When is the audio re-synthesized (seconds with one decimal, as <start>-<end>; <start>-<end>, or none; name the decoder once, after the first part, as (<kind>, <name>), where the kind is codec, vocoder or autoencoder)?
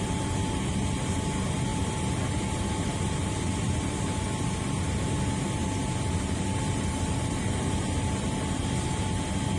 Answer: none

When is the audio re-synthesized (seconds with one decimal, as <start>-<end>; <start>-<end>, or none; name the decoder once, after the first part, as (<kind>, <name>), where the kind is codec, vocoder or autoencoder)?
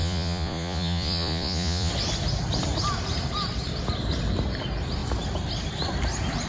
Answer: 0.0-1.9 (vocoder, Vocos)